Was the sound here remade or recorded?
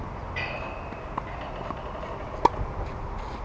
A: recorded